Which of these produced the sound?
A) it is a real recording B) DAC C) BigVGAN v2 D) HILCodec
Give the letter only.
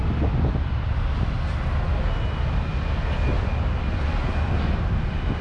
A